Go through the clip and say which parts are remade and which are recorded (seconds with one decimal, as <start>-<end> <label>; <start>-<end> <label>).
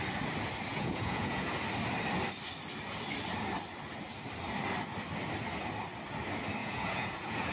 0.0-0.7 recorded; 0.7-1.5 remade; 1.5-6.6 recorded; 6.6-7.5 remade